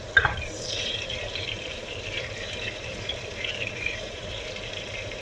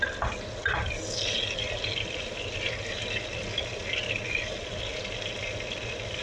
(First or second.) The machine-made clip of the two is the first